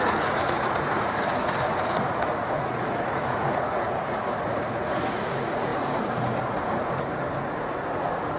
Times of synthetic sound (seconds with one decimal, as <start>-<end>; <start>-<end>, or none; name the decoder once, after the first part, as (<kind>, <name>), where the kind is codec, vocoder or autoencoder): 0.0-8.4 (vocoder, Vocos)